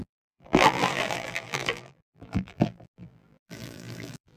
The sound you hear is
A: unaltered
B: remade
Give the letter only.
B